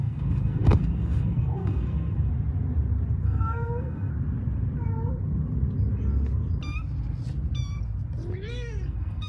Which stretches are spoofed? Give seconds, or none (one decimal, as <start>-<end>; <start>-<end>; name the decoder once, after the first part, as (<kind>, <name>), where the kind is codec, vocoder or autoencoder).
0.0-2.3 (codec, SNAC); 3.2-4.1; 8.5-9.3